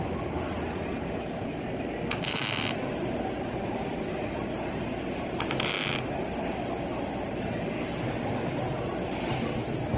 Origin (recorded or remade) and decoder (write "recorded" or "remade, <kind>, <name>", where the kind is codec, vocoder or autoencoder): recorded